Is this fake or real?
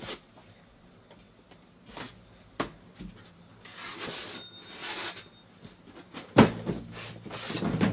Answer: real